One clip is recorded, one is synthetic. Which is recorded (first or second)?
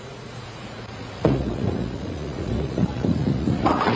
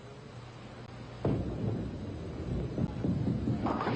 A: second